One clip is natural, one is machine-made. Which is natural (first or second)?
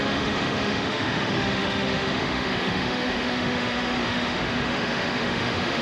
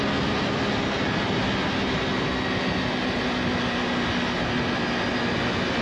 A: second